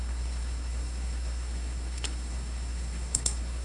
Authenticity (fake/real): fake